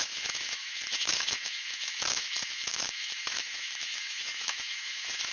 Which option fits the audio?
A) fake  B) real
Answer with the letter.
A